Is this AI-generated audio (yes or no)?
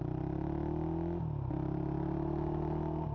no